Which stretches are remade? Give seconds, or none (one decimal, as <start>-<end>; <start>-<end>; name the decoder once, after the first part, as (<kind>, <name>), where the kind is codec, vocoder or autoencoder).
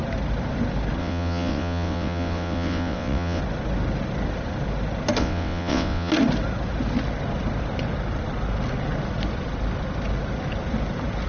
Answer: 1.0-3.4 (vocoder, WaveNeXt); 5.2-6.1